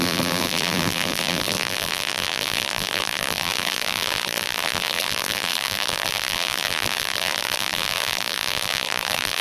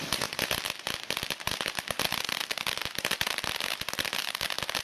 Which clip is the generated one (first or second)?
first